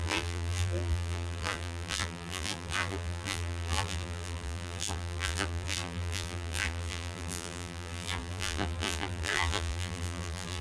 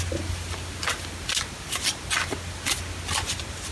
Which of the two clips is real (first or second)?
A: second